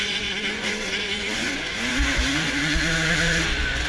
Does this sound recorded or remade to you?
remade